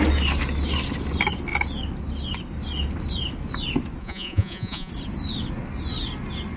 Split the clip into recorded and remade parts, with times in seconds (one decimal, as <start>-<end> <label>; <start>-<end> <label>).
0.0-4.0 recorded; 4.0-4.9 remade; 4.9-6.6 recorded